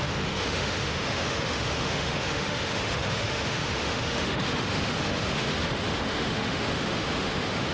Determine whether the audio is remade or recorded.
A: remade